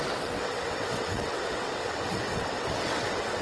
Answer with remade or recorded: remade